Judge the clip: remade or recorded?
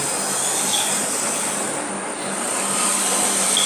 recorded